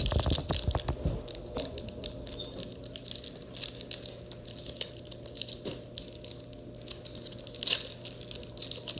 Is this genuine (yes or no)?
yes